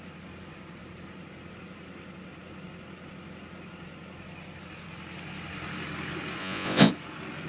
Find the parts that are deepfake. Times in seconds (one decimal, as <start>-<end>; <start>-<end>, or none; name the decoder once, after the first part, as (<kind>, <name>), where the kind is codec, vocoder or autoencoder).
6.4-6.9 (vocoder, Vocos)